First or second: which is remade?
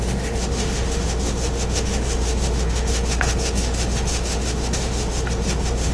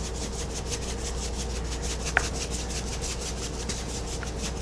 first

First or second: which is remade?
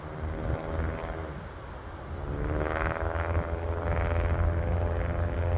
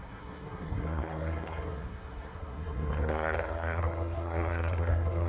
second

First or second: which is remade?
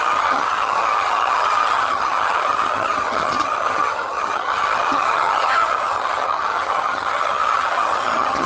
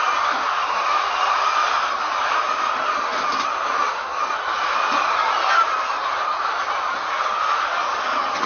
first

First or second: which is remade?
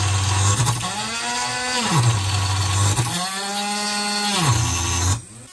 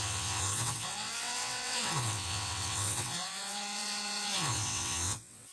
second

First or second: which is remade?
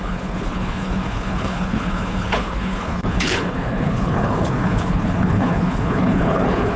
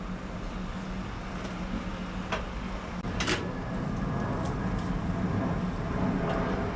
first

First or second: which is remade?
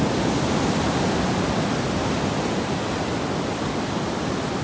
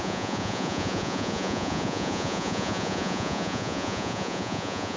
second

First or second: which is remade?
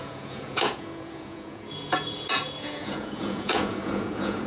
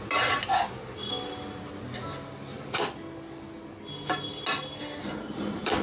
first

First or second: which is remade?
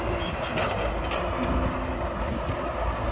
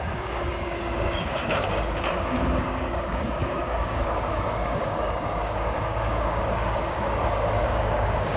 second